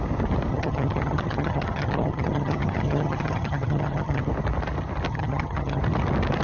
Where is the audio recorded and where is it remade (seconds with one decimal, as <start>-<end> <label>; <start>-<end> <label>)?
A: 0.0-0.5 recorded; 0.5-4.3 remade; 4.3-5.1 recorded; 5.1-5.8 remade; 5.8-6.4 recorded